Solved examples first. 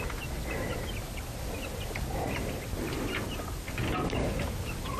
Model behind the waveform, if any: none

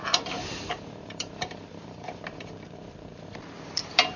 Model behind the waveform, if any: vocoder, BigVGAN v2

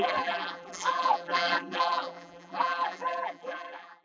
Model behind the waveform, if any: vocoder, BigVGAN v2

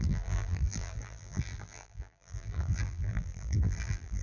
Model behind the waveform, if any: vocoder, BigVGAN v2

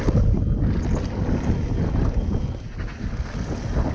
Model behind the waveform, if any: none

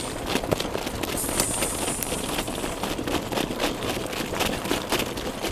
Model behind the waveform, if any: none